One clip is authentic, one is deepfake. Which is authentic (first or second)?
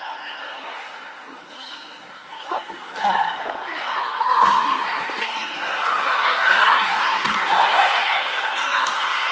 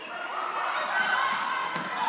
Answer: second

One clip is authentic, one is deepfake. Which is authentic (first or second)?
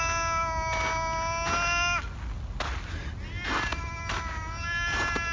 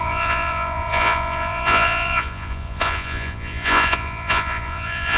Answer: first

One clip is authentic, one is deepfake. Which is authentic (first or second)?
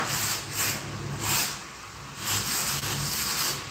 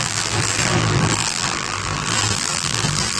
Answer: first